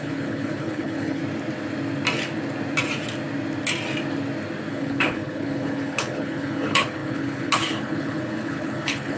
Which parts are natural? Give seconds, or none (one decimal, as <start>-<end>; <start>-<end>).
1.2-4.7